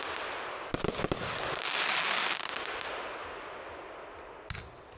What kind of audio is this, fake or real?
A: real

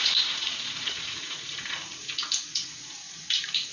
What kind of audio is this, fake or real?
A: fake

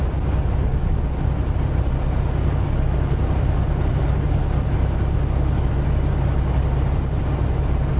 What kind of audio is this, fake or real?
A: real